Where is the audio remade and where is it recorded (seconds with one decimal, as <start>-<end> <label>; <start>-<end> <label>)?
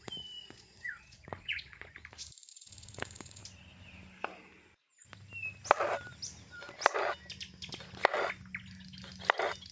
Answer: 0.0-0.4 recorded; 0.4-1.9 remade; 1.9-2.5 recorded; 2.5-3.4 remade; 3.4-9.7 recorded